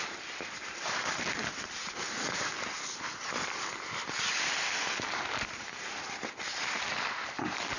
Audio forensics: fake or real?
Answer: fake